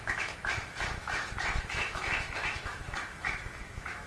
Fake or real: fake